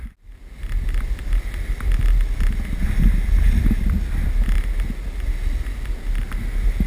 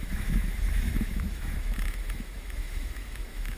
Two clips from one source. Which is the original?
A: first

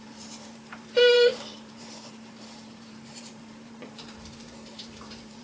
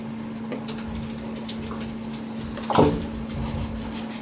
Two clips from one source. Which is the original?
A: second